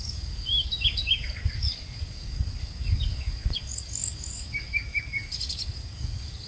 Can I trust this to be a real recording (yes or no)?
no